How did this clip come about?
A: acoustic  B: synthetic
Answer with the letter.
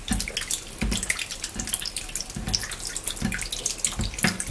A